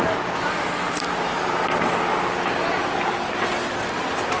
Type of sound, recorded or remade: recorded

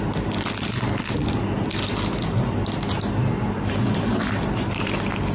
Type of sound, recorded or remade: recorded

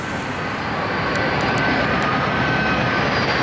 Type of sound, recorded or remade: recorded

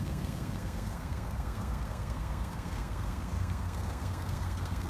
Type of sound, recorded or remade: remade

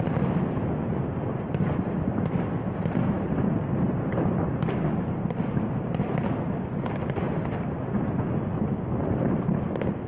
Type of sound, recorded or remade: recorded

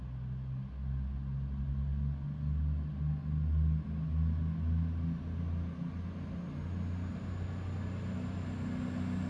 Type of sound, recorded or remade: recorded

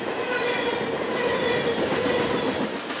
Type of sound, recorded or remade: recorded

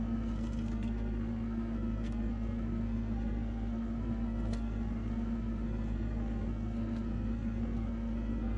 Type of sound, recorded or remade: remade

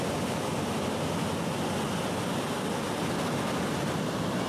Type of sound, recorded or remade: recorded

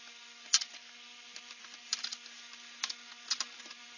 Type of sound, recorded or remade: recorded